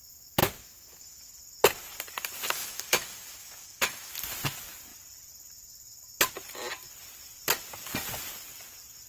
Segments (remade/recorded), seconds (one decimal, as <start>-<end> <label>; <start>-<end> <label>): 0.0-0.4 recorded; 0.4-1.4 remade; 1.4-2.6 recorded; 2.6-4.1 remade; 4.1-9.1 recorded